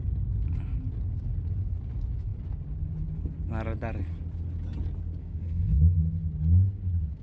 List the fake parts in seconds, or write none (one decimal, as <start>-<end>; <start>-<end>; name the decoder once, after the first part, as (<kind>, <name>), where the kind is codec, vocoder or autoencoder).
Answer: 5.2-6.0 (codec, SNAC)